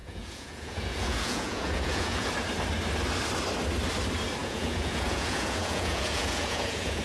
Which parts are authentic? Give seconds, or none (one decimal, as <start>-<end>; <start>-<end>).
2.3-4.4